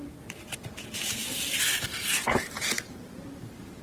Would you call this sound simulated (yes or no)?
yes